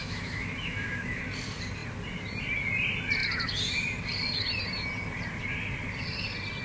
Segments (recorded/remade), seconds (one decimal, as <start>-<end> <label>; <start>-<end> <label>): 0.0-1.2 remade; 1.2-6.6 recorded